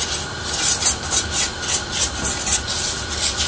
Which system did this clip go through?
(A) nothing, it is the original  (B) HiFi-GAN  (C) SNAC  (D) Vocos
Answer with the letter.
A